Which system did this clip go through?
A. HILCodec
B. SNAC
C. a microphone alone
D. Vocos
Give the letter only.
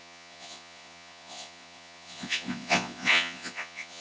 D